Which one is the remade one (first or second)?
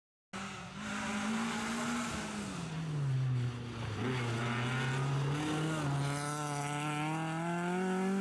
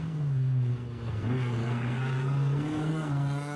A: second